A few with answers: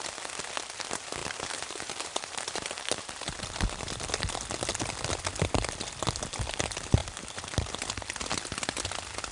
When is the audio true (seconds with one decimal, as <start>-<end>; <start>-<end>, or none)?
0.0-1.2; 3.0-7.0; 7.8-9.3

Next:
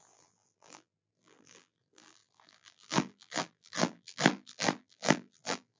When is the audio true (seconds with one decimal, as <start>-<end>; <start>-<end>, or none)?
none

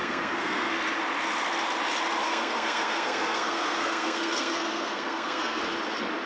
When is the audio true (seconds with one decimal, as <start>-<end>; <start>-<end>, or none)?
0.7-2.2; 5.6-6.3

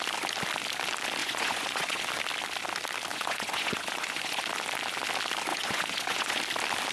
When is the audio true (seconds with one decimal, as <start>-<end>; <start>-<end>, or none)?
0.0-1.2; 2.0-3.1; 4.4-5.5; 6.4-6.9

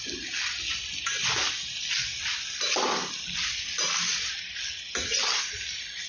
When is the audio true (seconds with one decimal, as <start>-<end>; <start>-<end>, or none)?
0.0-6.1

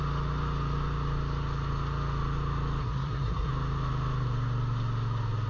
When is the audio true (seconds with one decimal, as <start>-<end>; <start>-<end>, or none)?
0.0-2.8; 3.5-5.5